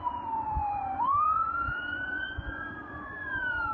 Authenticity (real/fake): fake